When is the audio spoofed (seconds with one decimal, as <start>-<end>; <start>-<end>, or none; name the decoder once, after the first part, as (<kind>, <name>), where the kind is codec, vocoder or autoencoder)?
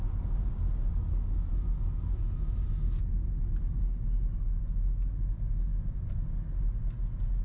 none